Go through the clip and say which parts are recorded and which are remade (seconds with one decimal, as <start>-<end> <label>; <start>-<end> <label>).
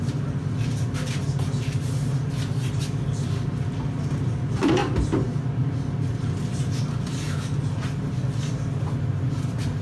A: 0.0-9.8 recorded